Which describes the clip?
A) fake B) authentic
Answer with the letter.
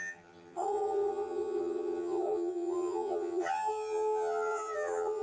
A